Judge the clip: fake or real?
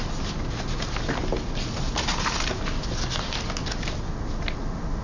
real